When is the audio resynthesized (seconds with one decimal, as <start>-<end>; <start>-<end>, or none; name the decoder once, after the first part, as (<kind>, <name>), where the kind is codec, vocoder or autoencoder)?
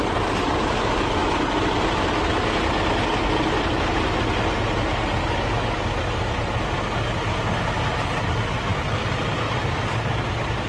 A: none